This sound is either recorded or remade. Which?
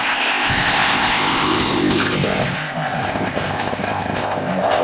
remade